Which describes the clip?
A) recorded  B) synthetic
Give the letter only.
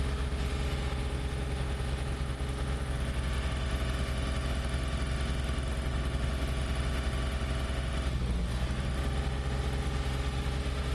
A